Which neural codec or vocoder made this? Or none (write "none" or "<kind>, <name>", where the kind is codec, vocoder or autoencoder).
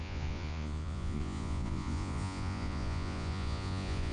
vocoder, Vocos